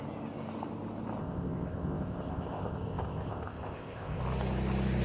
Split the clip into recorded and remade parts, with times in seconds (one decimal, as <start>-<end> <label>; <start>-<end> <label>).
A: 0.0-1.2 recorded; 1.2-4.2 remade; 4.2-5.0 recorded